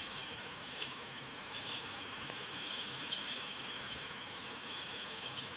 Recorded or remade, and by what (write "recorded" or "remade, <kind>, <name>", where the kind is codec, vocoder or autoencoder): remade, autoencoder, DAC-VAE